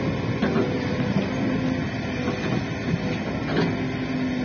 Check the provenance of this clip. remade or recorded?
recorded